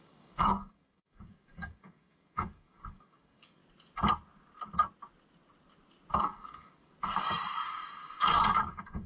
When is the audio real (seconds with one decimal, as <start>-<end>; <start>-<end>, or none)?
3.6-6.2; 6.9-8.2